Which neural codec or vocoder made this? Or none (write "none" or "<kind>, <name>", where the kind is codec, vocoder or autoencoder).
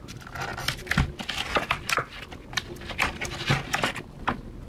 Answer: none